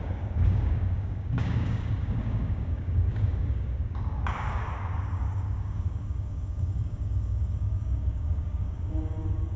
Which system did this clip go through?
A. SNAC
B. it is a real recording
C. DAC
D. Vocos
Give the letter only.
C